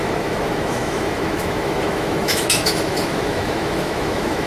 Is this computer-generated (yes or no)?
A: yes